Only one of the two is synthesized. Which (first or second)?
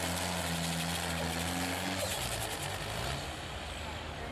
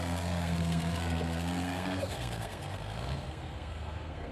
second